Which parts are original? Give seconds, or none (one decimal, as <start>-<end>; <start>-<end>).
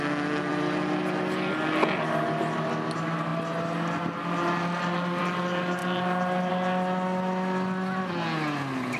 0.0-9.0